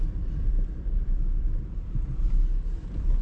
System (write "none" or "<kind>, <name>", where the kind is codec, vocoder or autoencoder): vocoder, BigVGAN v2